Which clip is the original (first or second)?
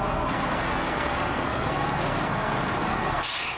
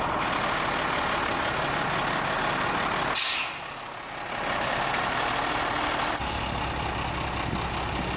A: second